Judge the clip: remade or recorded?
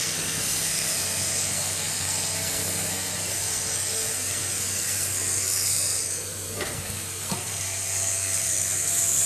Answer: remade